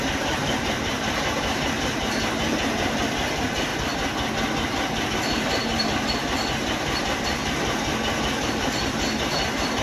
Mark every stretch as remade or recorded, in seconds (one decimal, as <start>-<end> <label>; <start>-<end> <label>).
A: 0.0-3.7 remade; 3.7-5.1 recorded; 5.1-7.4 remade; 7.4-8.4 recorded; 8.4-9.8 remade